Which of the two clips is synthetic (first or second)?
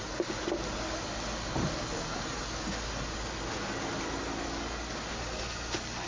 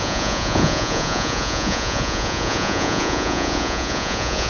second